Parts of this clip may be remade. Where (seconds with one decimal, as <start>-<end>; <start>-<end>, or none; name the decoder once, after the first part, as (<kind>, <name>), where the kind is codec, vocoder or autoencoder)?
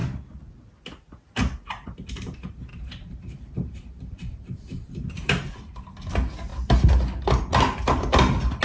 2.7-5.5 (vocoder, BigVGAN v2)